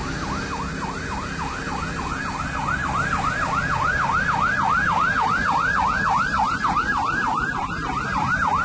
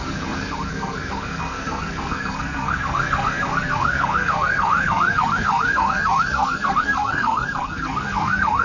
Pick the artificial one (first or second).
second